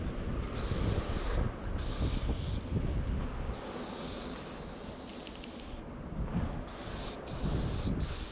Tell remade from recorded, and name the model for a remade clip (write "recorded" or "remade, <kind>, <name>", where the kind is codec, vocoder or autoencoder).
recorded